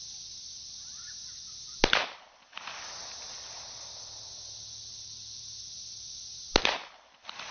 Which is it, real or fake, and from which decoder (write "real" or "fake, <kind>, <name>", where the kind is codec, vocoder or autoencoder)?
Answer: real